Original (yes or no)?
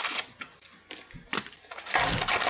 yes